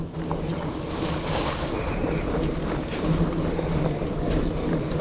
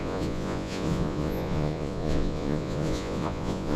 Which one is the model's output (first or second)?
second